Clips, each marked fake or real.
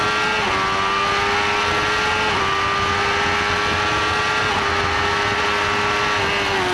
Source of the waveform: real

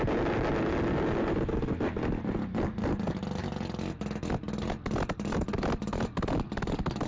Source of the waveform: real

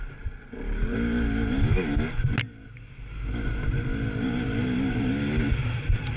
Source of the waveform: real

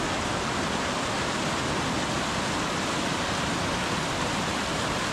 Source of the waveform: real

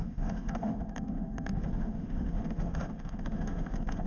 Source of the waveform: fake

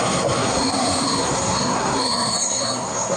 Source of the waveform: fake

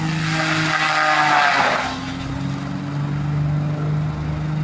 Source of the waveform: real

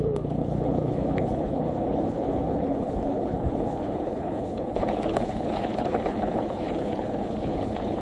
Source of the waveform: fake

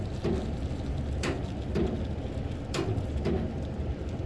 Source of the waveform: real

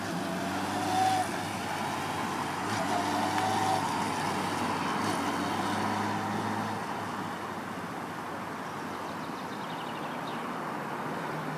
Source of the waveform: real